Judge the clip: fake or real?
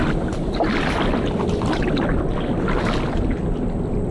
real